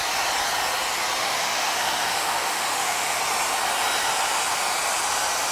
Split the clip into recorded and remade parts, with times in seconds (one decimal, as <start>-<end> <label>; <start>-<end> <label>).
0.0-1.2 recorded; 1.2-3.2 remade; 3.2-5.5 recorded